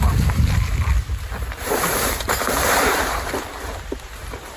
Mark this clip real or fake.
fake